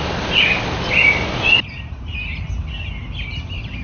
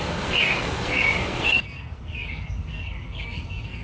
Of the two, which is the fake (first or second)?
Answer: second